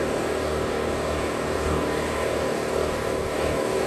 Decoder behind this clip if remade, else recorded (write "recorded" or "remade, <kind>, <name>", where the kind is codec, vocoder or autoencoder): remade, codec, DAC